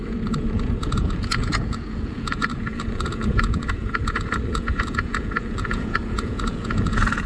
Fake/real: fake